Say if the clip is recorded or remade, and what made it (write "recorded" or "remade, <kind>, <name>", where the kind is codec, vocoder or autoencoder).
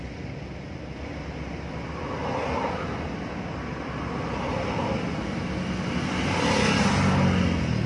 recorded